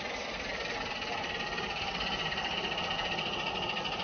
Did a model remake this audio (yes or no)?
no